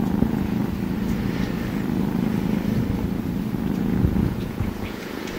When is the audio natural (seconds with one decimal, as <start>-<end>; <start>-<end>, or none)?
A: 0.6-3.8